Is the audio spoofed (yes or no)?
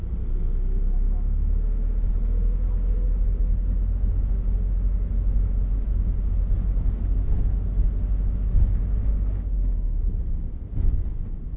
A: no